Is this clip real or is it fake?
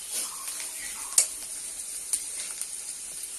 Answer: real